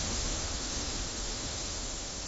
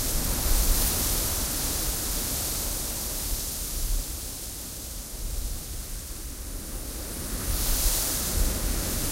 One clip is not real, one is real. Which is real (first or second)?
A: second